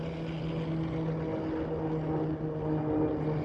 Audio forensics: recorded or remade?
recorded